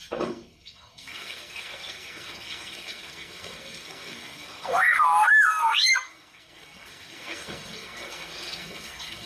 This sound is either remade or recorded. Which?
remade